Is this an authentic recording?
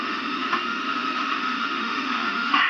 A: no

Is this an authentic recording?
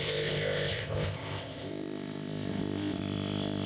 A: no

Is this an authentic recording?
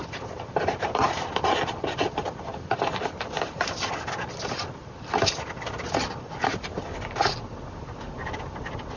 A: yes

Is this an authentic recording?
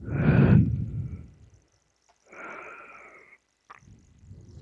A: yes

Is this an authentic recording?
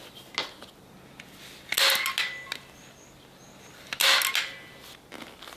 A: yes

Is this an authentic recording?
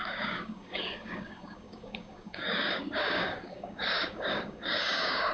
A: no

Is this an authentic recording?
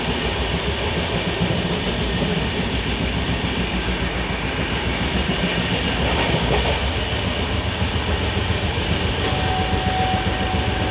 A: yes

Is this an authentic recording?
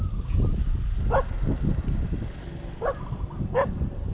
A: yes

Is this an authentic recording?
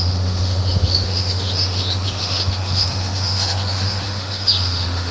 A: no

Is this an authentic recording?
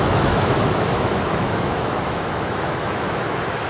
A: no